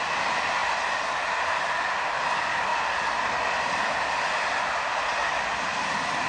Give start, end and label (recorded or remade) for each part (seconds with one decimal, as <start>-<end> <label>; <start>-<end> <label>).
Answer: 0.0-6.3 recorded